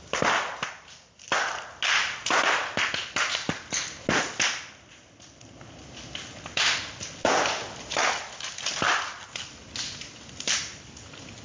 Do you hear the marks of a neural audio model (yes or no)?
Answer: no